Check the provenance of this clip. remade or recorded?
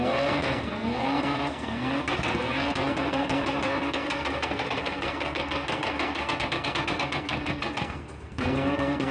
remade